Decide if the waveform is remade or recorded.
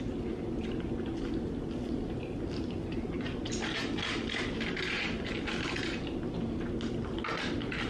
recorded